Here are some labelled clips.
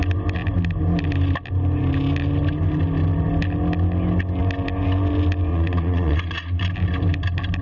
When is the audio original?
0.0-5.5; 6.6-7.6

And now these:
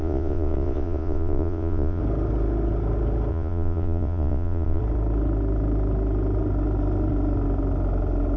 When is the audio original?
2.0-3.3; 4.8-8.4

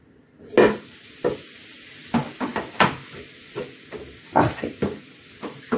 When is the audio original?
0.0-5.8